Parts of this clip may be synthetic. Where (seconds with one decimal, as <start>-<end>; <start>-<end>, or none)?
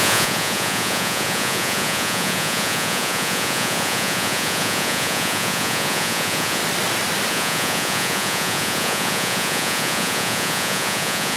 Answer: 0.0-6.6; 7.3-11.4